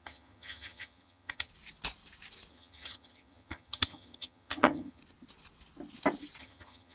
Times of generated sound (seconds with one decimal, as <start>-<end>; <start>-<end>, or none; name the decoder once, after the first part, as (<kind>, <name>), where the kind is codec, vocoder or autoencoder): 0.0-1.5 (vocoder, HiFi-GAN); 2.5-5.0; 6.4-6.9